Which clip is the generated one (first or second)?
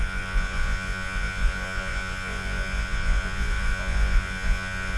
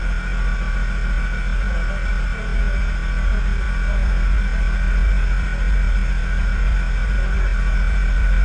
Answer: first